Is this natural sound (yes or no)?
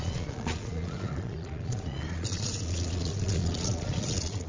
no